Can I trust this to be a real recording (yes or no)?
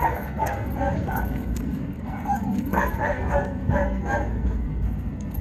no